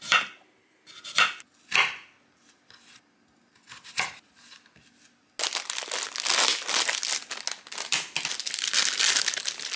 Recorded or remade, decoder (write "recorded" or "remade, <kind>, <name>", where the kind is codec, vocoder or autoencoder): recorded